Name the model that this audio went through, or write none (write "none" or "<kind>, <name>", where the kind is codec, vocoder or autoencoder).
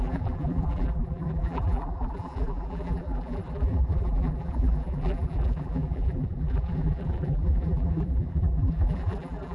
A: vocoder, BigVGAN v2